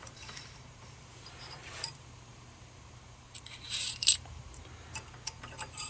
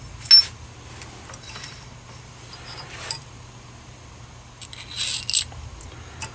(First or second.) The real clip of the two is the second